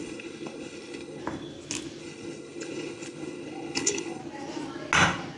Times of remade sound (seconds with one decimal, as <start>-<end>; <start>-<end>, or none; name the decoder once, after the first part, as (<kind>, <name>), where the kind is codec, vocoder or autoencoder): 0.0-1.2 (codec, HILCodec); 2.0-4.2